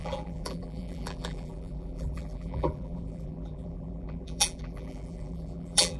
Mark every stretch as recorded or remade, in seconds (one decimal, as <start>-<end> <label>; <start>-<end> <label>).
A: 0.0-6.0 remade